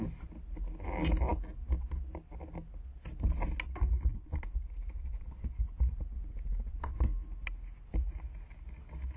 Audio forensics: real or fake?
real